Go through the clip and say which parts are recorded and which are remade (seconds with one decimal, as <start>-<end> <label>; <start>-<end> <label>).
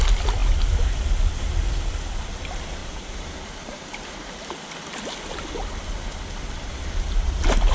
0.0-2.8 recorded; 2.8-4.3 remade; 4.3-7.7 recorded